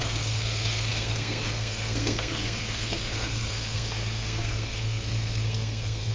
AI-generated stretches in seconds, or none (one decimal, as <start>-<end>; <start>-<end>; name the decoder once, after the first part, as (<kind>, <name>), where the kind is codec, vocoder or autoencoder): 0.0-6.1 (codec, SNAC)